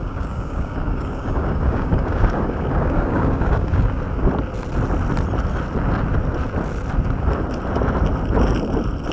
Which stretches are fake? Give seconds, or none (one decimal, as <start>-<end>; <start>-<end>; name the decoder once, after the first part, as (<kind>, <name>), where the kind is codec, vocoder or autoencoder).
0.0-4.0 (codec, DAC)